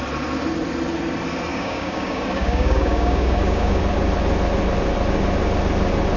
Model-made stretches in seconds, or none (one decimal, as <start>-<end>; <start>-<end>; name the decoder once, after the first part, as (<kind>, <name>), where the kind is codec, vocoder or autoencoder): 1.5-3.8 (codec, DAC)